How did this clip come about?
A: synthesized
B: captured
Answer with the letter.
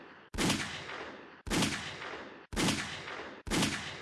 B